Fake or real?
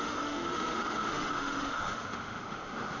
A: fake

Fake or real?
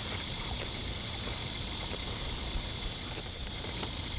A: fake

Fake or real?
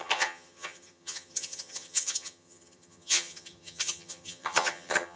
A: fake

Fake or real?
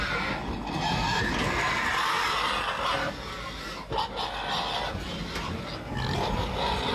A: real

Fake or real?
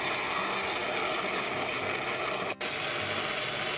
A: real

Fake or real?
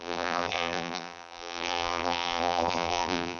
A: fake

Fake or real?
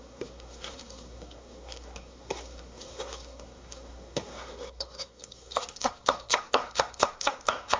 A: fake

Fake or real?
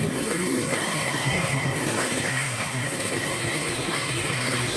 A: fake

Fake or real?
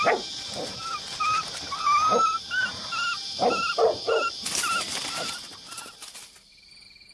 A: real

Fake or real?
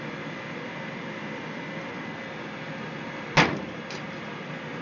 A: real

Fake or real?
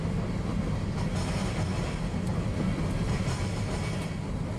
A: real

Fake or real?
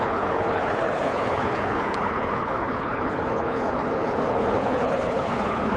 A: fake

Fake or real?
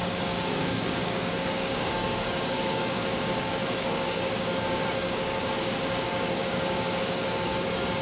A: fake